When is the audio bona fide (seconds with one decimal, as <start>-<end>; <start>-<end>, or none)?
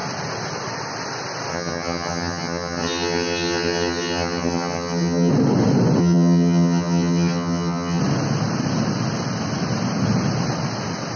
0.0-1.5; 5.3-6.0; 8.0-11.2